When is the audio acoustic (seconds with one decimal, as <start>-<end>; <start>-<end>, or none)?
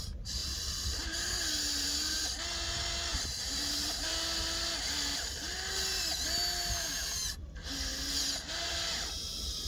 0.0-3.1; 4.1-9.7